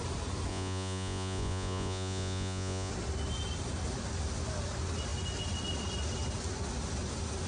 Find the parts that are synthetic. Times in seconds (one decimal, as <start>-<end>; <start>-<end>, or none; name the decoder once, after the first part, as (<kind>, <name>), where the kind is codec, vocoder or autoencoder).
0.5-2.9 (vocoder, Vocos)